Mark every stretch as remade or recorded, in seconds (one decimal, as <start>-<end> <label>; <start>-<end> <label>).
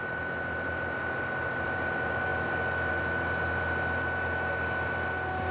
0.0-5.5 recorded